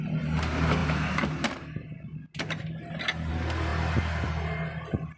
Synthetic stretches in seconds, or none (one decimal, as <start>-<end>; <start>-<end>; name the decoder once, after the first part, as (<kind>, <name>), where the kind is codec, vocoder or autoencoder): none